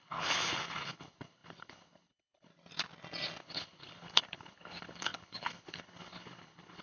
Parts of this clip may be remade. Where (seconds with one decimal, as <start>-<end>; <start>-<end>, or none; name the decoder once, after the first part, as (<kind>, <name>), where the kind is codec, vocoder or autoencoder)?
0.0-2.5 (codec, HILCodec); 3.4-6.8